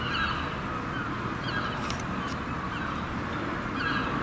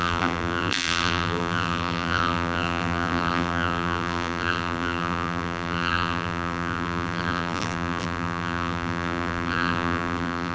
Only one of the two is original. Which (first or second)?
first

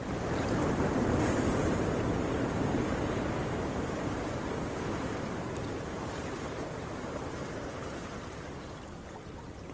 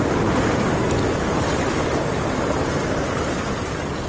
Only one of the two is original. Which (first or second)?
second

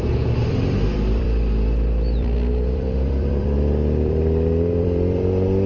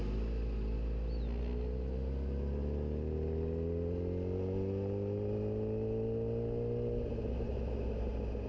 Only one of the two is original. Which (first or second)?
second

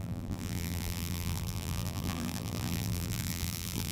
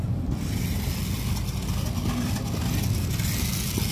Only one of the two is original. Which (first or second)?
second